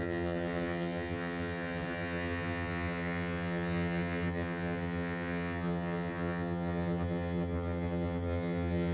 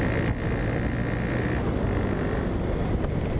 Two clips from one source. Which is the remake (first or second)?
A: first